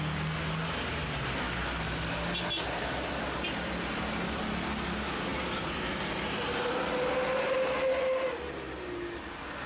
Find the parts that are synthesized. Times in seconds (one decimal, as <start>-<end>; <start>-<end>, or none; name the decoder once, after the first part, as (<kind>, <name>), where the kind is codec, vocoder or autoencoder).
none